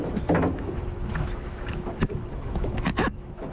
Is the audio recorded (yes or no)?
no